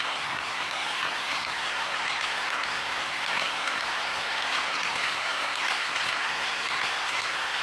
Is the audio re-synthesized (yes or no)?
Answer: yes